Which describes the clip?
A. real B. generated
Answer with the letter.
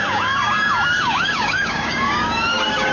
B